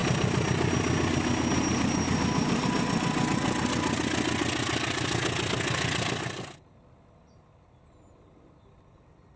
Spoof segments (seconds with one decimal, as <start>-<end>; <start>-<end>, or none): none